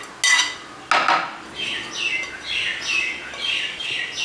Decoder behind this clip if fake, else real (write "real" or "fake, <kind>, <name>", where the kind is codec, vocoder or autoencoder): real